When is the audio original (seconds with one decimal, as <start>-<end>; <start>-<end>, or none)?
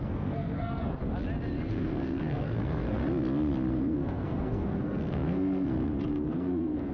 1.0-1.7; 3.0-3.7